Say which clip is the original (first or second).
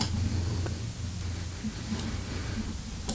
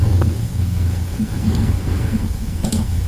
first